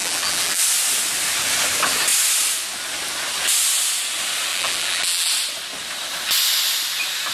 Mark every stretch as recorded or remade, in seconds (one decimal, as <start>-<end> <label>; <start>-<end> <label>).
0.0-0.6 remade; 0.6-4.5 recorded; 4.5-5.3 remade; 5.3-7.3 recorded